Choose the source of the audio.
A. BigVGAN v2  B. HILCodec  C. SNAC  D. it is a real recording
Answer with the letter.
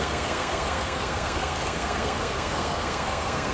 C